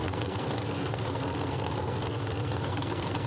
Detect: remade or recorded remade